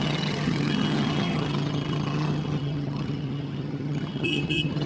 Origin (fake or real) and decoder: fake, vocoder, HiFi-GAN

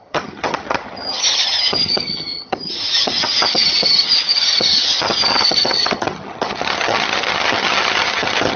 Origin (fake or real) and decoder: fake, vocoder, HiFi-GAN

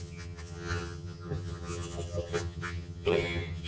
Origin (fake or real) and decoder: fake, vocoder, HiFi-GAN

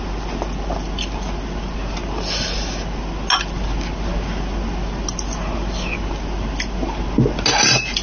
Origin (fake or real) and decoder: real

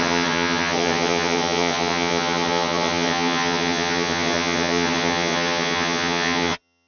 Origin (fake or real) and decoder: fake, vocoder, HiFi-GAN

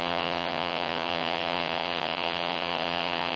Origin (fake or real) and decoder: fake, vocoder, HiFi-GAN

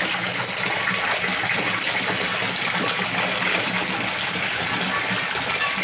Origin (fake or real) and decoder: real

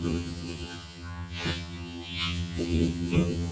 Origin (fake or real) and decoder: fake, vocoder, HiFi-GAN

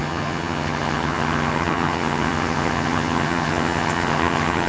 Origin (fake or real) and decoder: fake, vocoder, HiFi-GAN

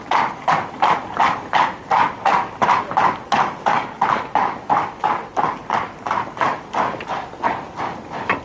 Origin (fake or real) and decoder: real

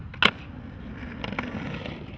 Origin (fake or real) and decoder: real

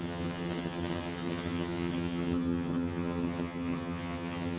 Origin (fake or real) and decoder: fake, vocoder, HiFi-GAN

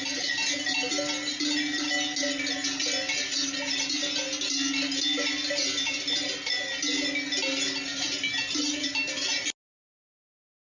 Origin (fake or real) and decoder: real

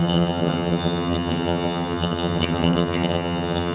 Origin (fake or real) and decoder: fake, vocoder, HiFi-GAN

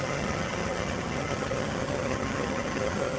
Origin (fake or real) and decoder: fake, vocoder, HiFi-GAN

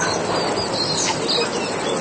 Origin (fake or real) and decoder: real